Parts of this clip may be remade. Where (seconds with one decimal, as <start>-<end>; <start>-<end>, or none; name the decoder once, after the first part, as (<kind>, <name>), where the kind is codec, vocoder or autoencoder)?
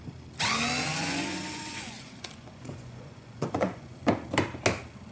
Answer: 0.9-4.0 (vocoder, Vocos)